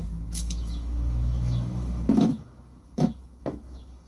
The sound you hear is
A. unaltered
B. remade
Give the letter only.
B